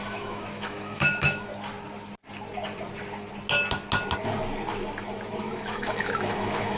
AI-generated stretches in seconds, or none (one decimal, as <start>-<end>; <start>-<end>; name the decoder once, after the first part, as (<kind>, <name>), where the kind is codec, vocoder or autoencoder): 0.0-1.5 (autoencoder, DAC-VAE); 5.4-6.8